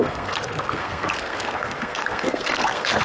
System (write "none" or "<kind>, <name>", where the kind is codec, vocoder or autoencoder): codec, SNAC